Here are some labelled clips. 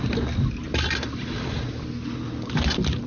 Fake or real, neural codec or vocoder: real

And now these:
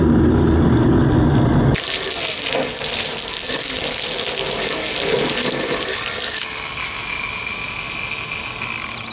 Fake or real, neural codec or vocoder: real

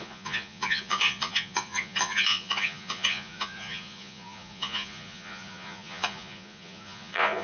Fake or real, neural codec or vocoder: fake, vocoder, Vocos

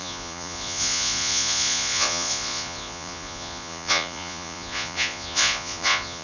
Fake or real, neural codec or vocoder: fake, vocoder, Vocos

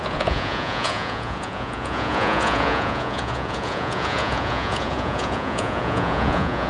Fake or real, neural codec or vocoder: fake, vocoder, Vocos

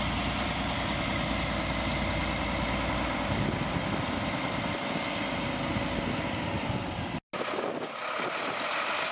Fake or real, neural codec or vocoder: real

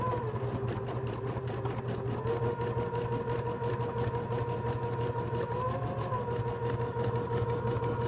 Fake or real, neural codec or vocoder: real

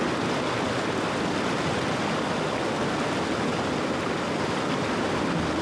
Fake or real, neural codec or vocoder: real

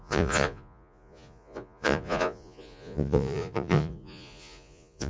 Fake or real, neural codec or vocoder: fake, vocoder, Vocos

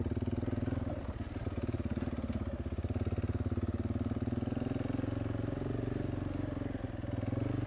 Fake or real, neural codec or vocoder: real